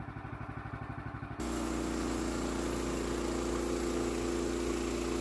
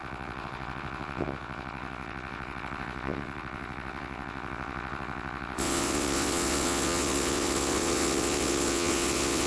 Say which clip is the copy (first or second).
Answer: second